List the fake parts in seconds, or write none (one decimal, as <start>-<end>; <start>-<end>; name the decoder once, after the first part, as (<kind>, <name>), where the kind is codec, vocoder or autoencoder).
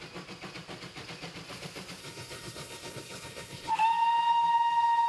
2.0-3.7 (codec, HILCodec)